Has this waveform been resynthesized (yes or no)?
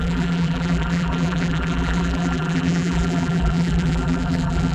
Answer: yes